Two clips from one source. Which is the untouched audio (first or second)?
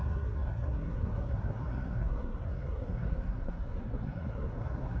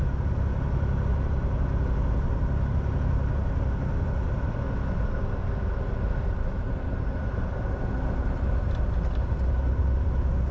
second